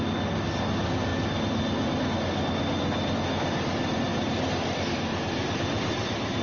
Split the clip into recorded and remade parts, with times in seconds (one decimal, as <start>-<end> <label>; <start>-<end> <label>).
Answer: 0.0-6.4 recorded